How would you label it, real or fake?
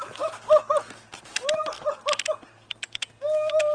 real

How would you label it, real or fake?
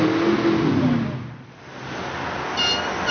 real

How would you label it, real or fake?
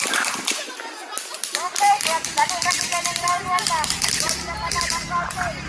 real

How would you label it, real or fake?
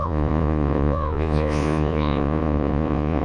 fake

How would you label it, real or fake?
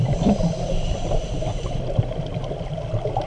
real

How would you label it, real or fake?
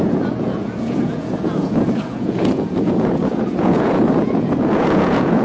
fake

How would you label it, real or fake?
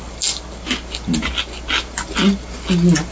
real